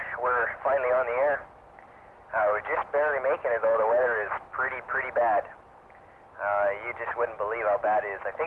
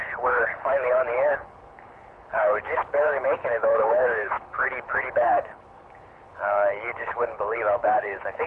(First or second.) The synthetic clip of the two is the second